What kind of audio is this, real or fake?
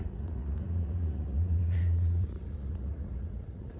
fake